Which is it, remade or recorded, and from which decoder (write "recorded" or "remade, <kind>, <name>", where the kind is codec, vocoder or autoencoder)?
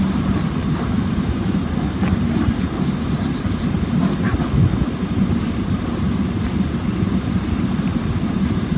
recorded